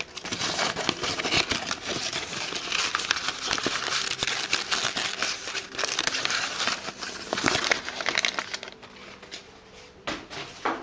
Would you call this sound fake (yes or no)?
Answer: no